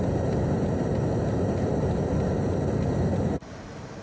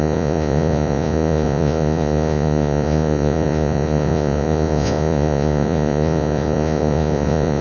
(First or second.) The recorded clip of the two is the first